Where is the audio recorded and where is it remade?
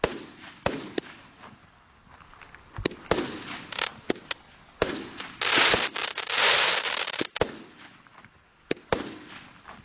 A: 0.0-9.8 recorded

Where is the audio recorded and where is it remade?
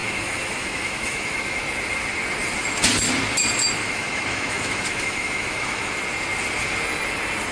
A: 0.0-1.6 remade; 1.6-3.8 recorded; 3.8-5.9 remade; 5.9-7.5 recorded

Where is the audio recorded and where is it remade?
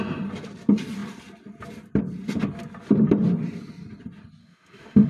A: 0.0-4.4 recorded; 4.4-5.1 remade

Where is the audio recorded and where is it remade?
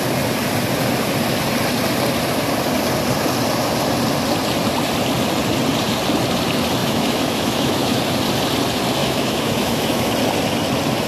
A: 0.0-6.8 recorded; 6.8-8.0 remade; 8.0-9.0 recorded; 9.0-10.1 remade; 10.1-11.1 recorded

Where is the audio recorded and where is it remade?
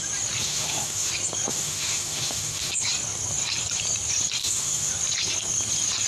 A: 0.0-0.4 recorded; 0.4-1.1 remade; 1.1-1.5 recorded; 1.5-2.7 remade; 2.7-4.4 recorded; 4.4-4.9 remade; 4.9-6.1 recorded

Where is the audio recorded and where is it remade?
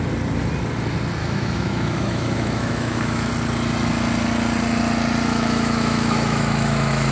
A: 0.0-1.2 recorded; 1.2-3.3 remade; 3.3-5.3 recorded; 5.3-7.1 remade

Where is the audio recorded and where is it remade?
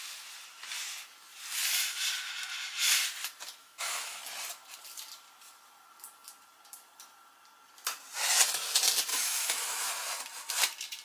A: 0.0-3.6 recorded; 3.6-4.2 remade; 4.2-9.1 recorded; 9.1-9.9 remade; 9.9-11.0 recorded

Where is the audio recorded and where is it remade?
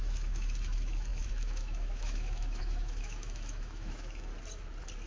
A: 0.0-4.3 remade; 4.3-5.1 recorded